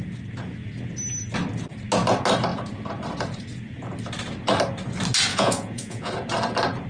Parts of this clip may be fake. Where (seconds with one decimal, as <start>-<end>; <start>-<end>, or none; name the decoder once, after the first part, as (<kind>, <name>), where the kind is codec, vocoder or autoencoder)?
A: 5.3-6.1 (vocoder, Vocos)